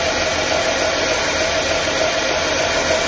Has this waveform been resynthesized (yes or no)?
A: no